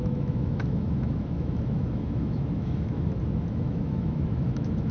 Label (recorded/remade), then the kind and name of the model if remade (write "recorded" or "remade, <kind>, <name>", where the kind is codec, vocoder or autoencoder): remade, autoencoder, DAC-VAE